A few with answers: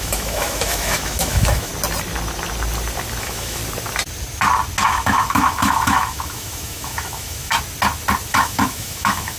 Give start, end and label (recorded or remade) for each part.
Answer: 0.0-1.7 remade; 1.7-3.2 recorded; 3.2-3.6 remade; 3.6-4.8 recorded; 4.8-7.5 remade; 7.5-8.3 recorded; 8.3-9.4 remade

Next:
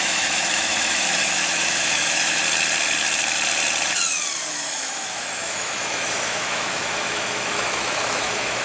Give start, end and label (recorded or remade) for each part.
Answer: 0.0-2.4 remade; 2.4-4.5 recorded; 4.5-8.6 remade

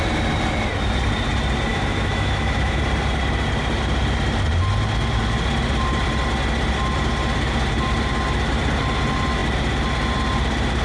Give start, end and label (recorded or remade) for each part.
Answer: 0.0-1.7 recorded; 1.7-2.8 remade; 2.8-10.8 recorded

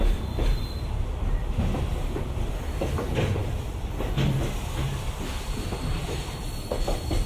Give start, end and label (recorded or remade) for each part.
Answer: 0.0-7.3 recorded

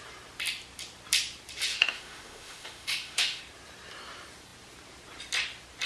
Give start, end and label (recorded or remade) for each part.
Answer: 0.0-1.7 recorded; 1.7-3.4 remade; 3.4-5.9 recorded

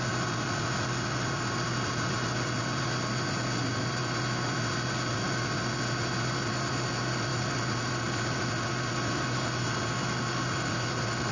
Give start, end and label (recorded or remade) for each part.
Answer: 0.0-11.3 recorded

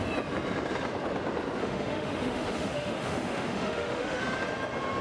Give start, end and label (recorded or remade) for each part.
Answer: 0.0-1.6 recorded; 1.6-4.2 remade; 4.2-5.0 recorded